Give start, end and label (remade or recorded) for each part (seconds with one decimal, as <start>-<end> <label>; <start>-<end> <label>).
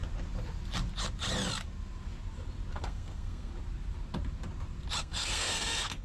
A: 0.0-2.8 recorded; 2.8-3.5 remade; 3.5-5.0 recorded; 5.0-6.0 remade